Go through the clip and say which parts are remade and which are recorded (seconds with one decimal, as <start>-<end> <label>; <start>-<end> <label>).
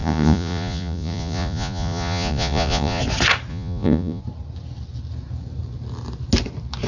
0.0-3.0 remade; 3.0-3.5 recorded; 3.5-4.2 remade; 4.2-6.9 recorded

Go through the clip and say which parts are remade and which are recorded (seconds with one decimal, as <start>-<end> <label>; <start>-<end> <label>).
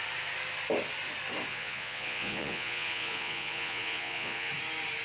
0.0-1.5 recorded; 1.5-4.5 remade; 4.5-5.0 recorded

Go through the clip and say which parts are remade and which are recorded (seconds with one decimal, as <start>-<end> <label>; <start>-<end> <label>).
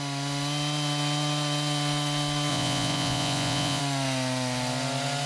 0.0-2.5 recorded; 2.5-3.8 remade; 3.8-5.3 recorded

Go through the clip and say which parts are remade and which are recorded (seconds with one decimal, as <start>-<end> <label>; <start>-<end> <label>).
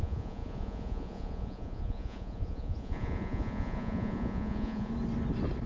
0.0-4.9 remade; 4.9-5.7 recorded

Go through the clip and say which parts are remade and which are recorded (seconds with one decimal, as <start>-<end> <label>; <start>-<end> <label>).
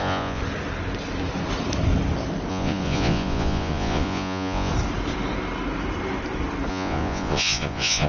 0.0-0.4 remade; 0.4-2.5 recorded; 2.5-4.7 remade; 4.7-6.7 recorded; 6.7-8.1 remade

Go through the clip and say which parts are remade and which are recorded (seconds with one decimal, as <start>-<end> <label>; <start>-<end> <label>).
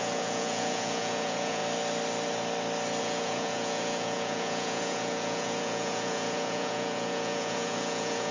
0.0-1.6 remade; 1.6-3.0 recorded; 3.0-8.3 remade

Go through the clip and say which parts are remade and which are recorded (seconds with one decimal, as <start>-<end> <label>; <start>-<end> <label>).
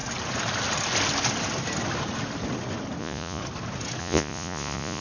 0.0-3.0 recorded; 3.0-3.4 remade; 3.4-4.0 recorded; 4.0-5.0 remade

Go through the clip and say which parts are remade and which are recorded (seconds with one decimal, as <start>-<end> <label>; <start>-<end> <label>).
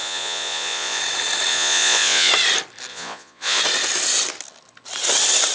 0.0-1.0 remade; 1.0-1.5 recorded; 1.5-2.3 remade; 2.3-2.9 recorded; 2.9-3.6 remade; 3.6-5.5 recorded